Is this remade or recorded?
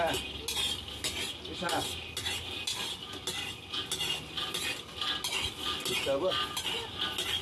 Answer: recorded